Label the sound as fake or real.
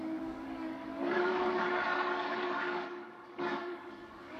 fake